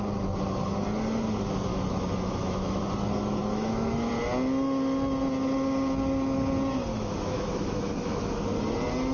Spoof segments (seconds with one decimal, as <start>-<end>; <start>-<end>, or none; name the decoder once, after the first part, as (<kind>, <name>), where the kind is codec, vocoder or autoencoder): 1.7-2.8 (autoencoder, DAC-VAE); 3.4-4.1; 6.9-8.3